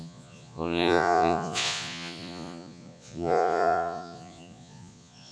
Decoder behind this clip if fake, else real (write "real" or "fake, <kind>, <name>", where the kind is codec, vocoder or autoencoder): fake, vocoder, Vocos